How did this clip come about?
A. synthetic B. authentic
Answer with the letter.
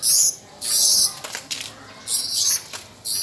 B